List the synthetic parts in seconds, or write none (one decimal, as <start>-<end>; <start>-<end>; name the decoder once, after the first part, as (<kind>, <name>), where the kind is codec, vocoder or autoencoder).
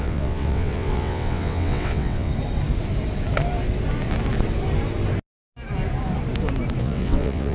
0.0-2.3 (vocoder, WaveNeXt); 6.8-7.5